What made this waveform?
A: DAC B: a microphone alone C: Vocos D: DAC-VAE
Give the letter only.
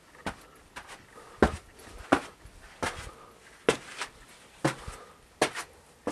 B